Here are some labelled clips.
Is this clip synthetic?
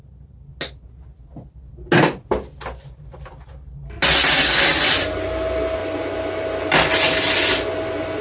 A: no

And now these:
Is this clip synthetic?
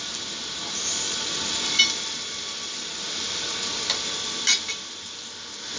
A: no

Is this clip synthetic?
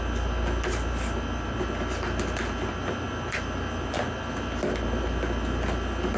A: no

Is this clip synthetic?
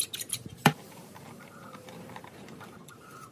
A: yes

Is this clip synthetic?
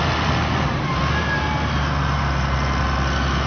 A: no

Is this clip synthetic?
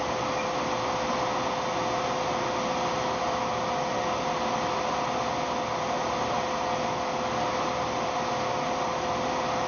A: no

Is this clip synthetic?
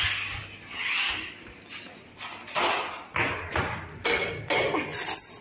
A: no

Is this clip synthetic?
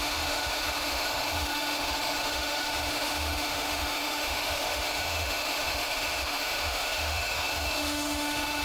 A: yes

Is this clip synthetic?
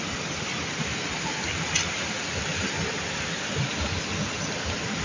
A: no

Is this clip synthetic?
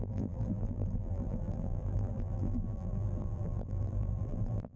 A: yes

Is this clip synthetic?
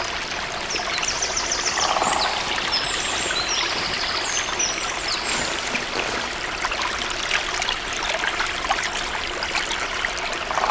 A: no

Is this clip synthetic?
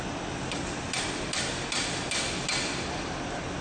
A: no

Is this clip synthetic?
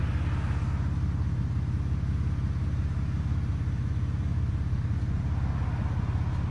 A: no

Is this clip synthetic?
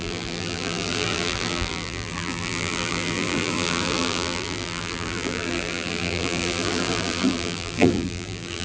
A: yes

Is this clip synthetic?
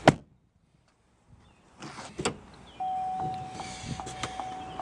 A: no